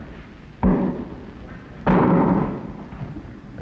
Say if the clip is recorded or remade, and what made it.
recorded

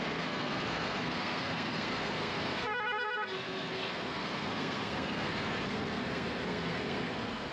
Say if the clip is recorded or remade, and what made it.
remade, codec, SNAC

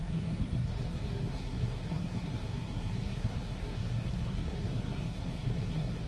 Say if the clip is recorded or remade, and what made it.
remade, codec, SNAC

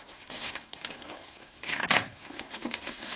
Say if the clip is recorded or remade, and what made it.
remade, codec, SNAC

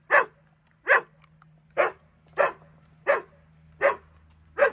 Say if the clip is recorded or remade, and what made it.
recorded